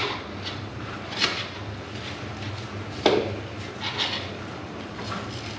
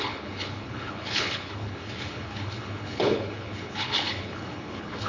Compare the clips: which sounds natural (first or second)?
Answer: first